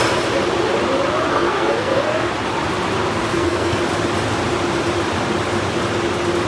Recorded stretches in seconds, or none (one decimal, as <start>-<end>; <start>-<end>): 0.0-1.3; 2.3-3.3; 3.8-6.5